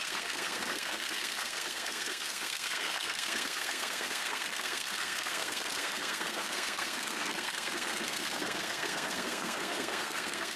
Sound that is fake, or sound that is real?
fake